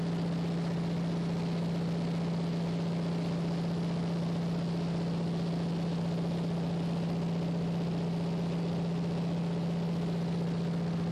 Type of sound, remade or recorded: recorded